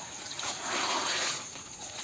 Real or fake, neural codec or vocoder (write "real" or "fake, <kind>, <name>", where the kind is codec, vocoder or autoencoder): fake, vocoder, Vocos